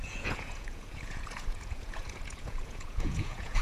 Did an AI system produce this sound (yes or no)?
yes